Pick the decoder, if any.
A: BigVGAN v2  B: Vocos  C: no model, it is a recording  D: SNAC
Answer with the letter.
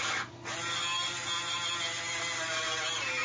A